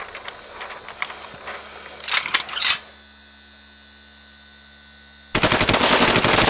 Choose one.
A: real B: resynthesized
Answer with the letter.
A